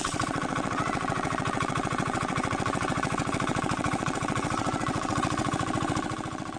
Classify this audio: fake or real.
fake